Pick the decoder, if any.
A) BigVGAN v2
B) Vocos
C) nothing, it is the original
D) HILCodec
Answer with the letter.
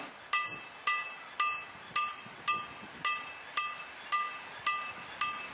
C